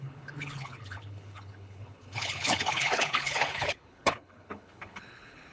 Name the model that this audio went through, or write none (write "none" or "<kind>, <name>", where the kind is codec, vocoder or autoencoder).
codec, HILCodec